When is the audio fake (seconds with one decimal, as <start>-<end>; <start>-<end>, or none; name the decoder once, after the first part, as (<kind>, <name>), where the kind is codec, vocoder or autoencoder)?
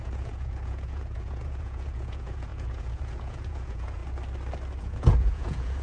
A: 0.0-4.0 (vocoder, Vocos); 4.8-5.8